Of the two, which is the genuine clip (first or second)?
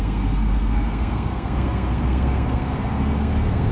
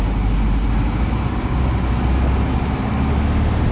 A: second